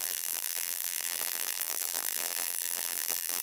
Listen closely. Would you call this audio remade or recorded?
remade